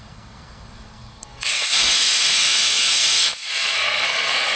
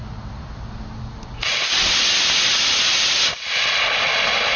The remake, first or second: first